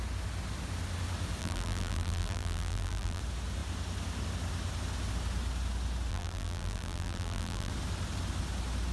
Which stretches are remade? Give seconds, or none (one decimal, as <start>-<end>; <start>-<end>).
1.4-3.2; 6.1-7.7